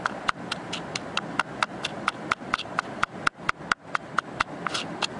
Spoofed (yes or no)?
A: no